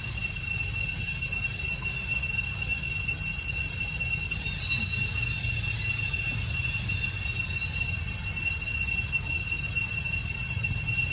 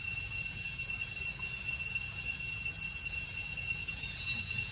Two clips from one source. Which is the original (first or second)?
first